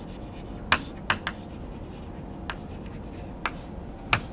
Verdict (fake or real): real